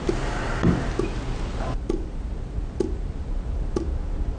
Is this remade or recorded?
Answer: recorded